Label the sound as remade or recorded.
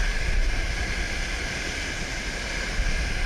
recorded